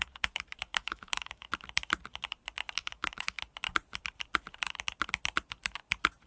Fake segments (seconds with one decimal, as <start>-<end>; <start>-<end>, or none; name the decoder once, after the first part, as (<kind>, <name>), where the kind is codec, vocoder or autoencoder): 0.7-1.5 (autoencoder, DAC-VAE); 2.8-3.4